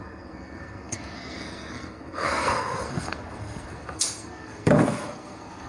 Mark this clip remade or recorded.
remade